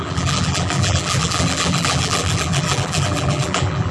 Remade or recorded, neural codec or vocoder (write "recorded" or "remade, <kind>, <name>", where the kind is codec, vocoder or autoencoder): remade, vocoder, BigVGAN v2